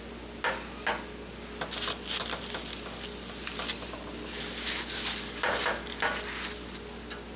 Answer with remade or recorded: recorded